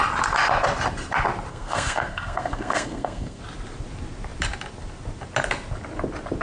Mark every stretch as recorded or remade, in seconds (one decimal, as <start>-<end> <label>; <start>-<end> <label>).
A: 0.0-1.5 recorded; 1.5-3.4 remade; 3.4-6.4 recorded